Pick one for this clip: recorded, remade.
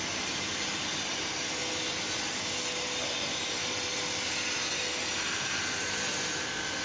recorded